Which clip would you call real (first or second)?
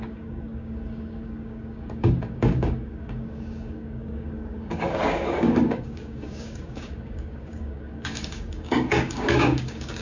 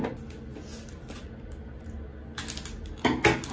second